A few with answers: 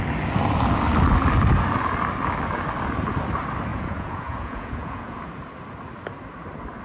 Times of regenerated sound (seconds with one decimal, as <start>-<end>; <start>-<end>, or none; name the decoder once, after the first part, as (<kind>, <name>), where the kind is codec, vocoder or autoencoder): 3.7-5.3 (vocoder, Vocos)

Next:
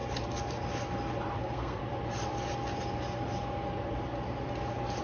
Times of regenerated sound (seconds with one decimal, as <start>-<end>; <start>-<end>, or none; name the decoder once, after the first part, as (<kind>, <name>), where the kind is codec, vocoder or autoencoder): 1.4-1.8 (codec, SNAC)

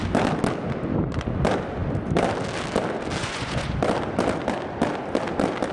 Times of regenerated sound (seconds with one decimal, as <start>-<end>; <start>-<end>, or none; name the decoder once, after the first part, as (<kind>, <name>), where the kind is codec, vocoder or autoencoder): 3.2-3.8 (vocoder, Vocos)

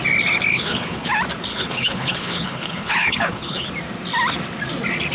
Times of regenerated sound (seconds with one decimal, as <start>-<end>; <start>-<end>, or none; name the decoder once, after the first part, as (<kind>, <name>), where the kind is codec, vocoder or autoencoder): 0.5-1.1 (codec, HILCodec); 1.5-3.7

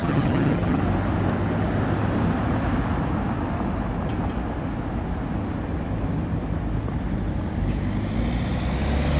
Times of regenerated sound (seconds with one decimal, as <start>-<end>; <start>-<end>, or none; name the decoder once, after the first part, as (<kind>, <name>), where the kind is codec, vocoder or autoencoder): 0.0-0.8 (vocoder, HiFi-GAN)

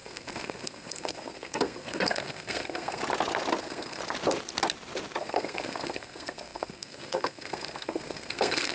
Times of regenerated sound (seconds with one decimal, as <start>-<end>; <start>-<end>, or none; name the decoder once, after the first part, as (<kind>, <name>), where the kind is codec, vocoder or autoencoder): 0.0-3.0 (codec, SNAC); 3.6-4.0; 5.2-8.7

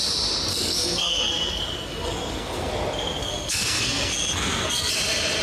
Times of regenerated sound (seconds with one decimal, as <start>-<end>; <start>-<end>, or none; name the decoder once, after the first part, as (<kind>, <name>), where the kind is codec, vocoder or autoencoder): 0.5-2.7 (codec, SNAC); 3.2-4.9